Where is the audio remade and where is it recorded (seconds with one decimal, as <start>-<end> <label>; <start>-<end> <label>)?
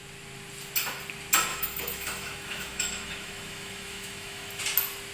0.0-1.5 recorded; 1.5-4.6 remade; 4.6-5.1 recorded